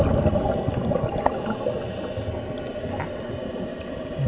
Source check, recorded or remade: recorded